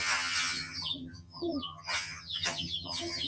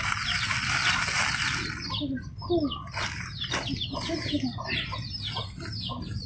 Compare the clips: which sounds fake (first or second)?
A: first